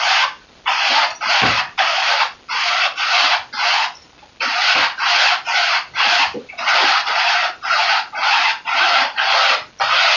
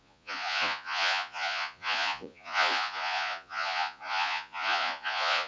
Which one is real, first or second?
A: first